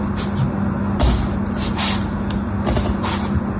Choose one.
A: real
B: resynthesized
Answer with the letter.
A